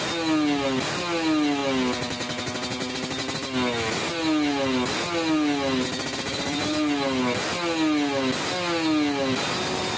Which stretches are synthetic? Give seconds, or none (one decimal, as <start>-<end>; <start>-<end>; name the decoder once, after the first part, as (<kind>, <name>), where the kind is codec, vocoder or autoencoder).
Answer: none